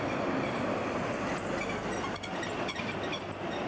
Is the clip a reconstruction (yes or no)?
no